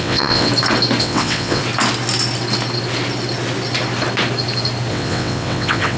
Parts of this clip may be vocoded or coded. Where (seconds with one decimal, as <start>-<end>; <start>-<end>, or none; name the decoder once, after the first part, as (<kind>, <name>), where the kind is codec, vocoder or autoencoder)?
0.0-0.5 (vocoder, WaveNeXt); 1.0-1.6; 4.9-6.0